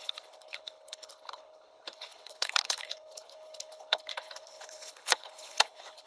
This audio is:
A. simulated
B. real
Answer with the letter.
A